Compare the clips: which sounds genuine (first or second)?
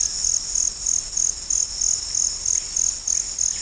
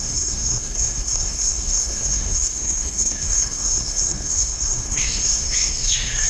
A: first